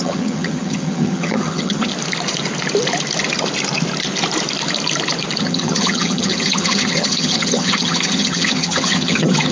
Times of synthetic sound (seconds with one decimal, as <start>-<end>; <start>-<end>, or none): 0.0-1.9; 5.4-9.5